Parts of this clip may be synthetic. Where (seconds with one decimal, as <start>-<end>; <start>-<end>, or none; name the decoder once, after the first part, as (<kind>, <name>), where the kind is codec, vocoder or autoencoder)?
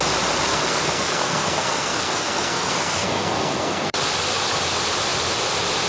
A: 0.5-4.0 (codec, SNAC)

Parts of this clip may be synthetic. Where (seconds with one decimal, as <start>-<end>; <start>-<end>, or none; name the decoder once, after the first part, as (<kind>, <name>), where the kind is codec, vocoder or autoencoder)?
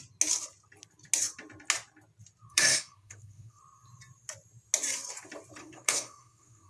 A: 2.5-3.6 (codec, SNAC); 5.6-6.7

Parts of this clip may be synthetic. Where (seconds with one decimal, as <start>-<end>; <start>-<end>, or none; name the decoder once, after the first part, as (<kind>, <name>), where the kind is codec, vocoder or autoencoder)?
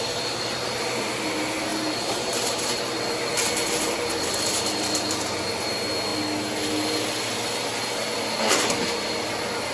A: 0.0-6.1 (vocoder, BigVGAN v2); 8.2-9.7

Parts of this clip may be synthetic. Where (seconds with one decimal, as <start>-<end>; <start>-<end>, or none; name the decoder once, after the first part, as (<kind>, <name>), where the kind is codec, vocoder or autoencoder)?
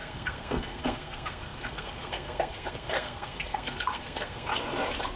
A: 0.0-4.5 (codec, SNAC)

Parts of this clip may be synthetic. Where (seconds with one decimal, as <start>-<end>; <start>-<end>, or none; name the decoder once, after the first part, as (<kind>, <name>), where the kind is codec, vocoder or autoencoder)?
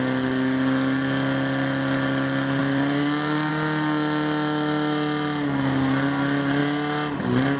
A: 2.6-3.5 (vocoder, BigVGAN v2)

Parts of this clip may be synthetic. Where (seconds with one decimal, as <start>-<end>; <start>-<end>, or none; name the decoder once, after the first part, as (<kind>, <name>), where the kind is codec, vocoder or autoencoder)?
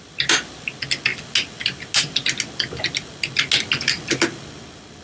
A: none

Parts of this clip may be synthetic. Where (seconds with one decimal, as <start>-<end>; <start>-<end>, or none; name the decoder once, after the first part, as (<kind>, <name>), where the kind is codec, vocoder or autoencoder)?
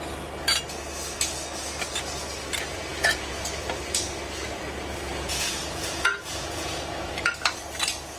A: 2.9-3.6 (vocoder, Vocos); 5.1-7.3